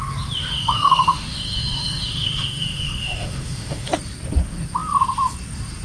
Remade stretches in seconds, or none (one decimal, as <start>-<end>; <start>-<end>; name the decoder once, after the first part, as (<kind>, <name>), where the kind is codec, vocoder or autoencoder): 0.4-3.9 (autoencoder, DAC-VAE)

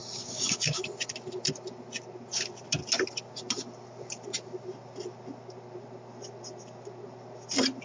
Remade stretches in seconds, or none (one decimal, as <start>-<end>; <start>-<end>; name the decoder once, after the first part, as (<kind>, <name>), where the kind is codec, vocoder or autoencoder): 0.0-0.8 (codec, DAC)

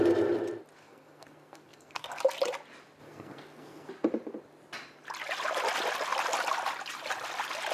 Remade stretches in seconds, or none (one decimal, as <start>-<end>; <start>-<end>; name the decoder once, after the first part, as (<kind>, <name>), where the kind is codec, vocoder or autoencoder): 0.8-2.2 (codec, SNAC); 3.0-3.9

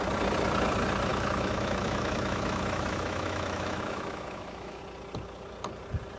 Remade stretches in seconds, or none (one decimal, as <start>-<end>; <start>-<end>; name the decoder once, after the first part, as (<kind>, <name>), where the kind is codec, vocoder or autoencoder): 1.1-4.8 (autoencoder, DAC-VAE)

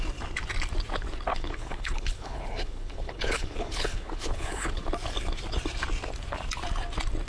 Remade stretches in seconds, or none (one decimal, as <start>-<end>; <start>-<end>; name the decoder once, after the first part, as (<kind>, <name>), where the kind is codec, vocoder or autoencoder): 1.3-4.8 (codec, HILCodec)